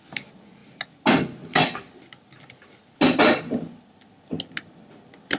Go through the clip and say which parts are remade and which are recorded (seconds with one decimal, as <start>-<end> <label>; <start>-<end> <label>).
0.0-5.4 recorded